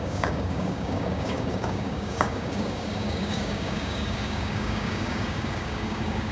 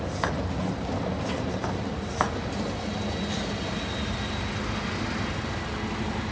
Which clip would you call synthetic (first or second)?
first